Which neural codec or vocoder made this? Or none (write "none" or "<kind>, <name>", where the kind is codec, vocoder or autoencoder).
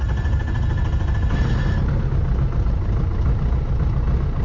none